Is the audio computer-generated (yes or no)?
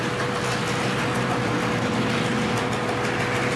no